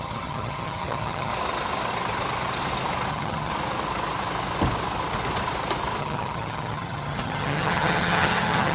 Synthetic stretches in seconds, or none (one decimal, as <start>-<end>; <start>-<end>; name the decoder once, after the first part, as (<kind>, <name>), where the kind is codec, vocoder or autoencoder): 0.0-1.3 (vocoder, HiFi-GAN); 3.1-3.5; 6.0-8.7